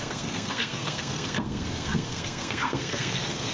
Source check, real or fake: fake